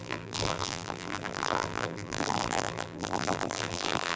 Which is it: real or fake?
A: fake